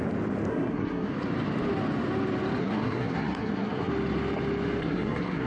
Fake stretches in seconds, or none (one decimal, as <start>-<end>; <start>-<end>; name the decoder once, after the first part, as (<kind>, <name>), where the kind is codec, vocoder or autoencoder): 0.5-1.1 (codec, SNAC); 2.6-3.9; 4.8-5.5